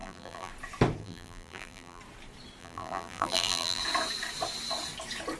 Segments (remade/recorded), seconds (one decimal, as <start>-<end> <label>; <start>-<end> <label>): 0.0-0.5 remade; 0.5-1.0 recorded; 1.0-2.0 remade; 2.0-2.6 recorded; 2.6-3.8 remade; 3.8-5.4 recorded